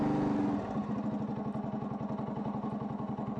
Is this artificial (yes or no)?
no